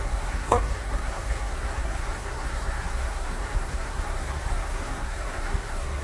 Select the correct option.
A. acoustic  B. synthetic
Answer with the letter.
B